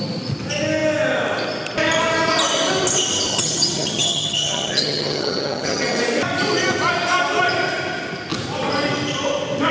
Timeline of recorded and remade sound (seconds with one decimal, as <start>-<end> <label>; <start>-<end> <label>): 0.0-3.3 recorded; 3.3-6.0 remade; 6.0-9.7 recorded